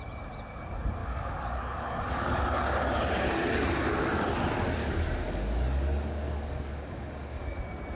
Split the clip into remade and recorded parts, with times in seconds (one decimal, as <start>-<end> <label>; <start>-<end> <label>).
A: 0.0-1.0 recorded; 1.0-3.1 remade; 3.1-4.8 recorded; 4.8-7.6 remade; 7.6-8.0 recorded